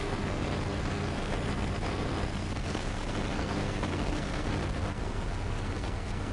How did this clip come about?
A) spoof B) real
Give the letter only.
A